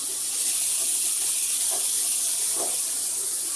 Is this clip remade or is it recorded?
recorded